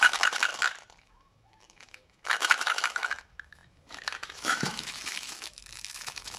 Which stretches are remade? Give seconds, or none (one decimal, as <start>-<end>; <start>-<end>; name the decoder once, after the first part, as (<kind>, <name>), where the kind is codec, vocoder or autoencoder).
0.0-0.5 (autoencoder, DAC-VAE); 1.0-6.4